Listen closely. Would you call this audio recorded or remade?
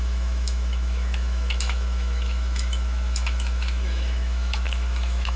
remade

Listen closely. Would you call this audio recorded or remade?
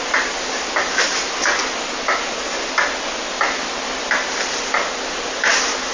recorded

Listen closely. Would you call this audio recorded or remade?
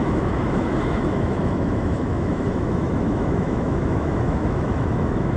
remade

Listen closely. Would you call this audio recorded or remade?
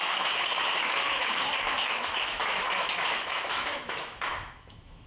remade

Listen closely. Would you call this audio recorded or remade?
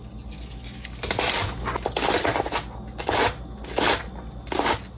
recorded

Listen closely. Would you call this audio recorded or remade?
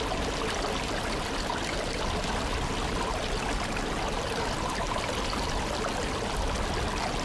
recorded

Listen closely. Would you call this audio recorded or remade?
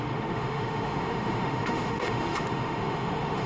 remade